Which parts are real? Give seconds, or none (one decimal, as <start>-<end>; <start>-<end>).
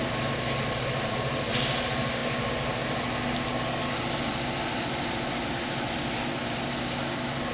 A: 0.0-7.5